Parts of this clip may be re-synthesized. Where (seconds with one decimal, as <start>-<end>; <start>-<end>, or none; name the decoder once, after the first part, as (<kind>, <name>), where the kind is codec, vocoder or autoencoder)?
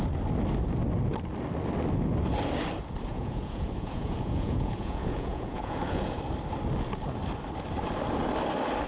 3.1-6.2 (vocoder, Vocos)